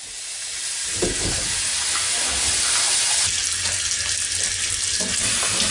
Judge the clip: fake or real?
real